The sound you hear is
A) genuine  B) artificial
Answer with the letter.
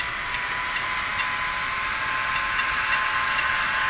A